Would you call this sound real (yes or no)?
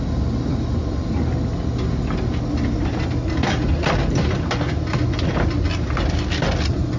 yes